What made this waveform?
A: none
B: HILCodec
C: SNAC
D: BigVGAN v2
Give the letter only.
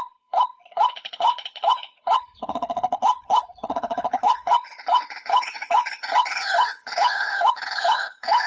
B